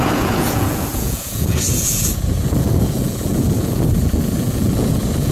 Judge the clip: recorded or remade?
remade